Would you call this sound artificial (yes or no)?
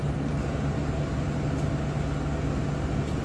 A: no